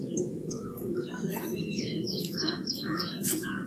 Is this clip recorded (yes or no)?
no